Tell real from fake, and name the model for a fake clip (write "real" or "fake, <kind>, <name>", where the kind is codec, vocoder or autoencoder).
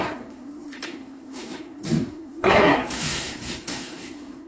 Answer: fake, codec, SNAC